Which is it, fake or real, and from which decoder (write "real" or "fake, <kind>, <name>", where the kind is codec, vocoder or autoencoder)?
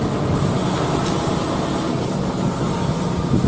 real